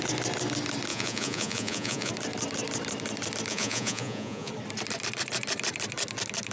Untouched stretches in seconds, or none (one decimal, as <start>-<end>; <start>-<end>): 0.0-0.9; 2.1-3.5; 4.5-6.5